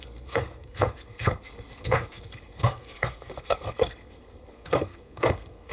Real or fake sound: fake